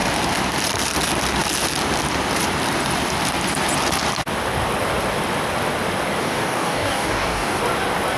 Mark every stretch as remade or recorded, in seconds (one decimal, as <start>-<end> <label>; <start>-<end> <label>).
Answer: 0.0-6.2 recorded; 6.2-7.6 remade; 7.6-8.2 recorded